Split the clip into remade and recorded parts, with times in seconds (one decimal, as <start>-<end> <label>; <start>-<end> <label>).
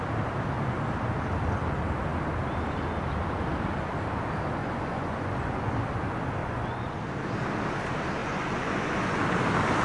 0.0-4.6 recorded; 4.6-5.7 remade; 5.7-6.4 recorded; 6.4-7.0 remade; 7.0-8.2 recorded; 8.2-9.2 remade; 9.2-9.8 recorded